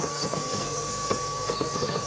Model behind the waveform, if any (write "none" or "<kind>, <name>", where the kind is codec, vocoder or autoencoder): codec, SNAC